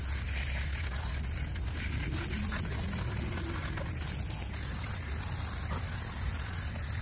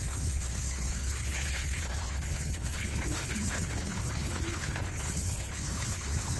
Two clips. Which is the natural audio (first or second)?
first